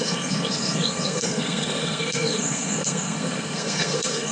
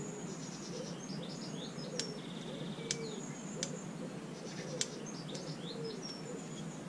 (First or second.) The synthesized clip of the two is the first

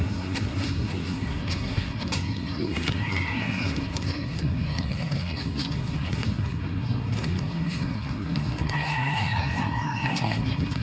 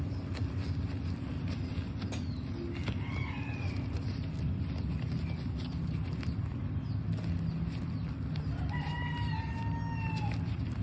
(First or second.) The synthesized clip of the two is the first